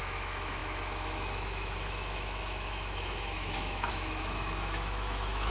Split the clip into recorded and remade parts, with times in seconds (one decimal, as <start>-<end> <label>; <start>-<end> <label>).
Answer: 0.0-5.5 remade